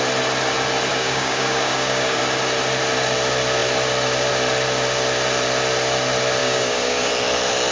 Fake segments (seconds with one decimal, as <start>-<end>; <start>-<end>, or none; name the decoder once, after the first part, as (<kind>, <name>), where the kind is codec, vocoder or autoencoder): 0.9-2.2 (codec, DAC); 6.4-7.1